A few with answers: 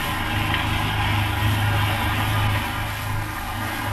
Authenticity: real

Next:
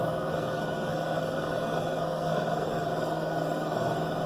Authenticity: fake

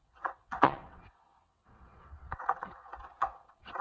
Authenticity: fake